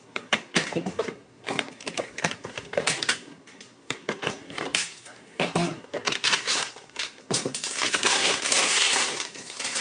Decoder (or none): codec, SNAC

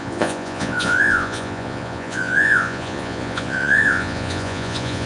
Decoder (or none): vocoder, Vocos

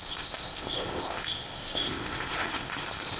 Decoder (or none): codec, ZipCodec